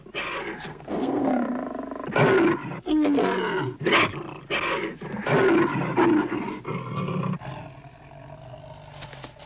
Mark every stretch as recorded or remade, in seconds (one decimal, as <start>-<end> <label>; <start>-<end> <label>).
0.0-0.7 recorded; 0.7-1.3 remade; 1.3-9.5 recorded